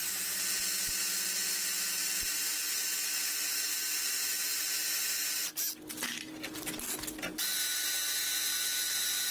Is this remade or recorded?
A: recorded